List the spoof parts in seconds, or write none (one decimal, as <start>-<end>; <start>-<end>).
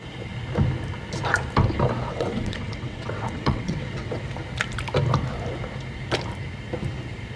2.1-4.2